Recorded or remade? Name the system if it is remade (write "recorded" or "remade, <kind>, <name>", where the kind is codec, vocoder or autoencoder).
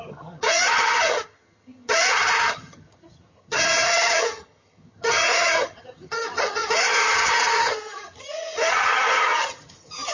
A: remade, vocoder, HiFi-GAN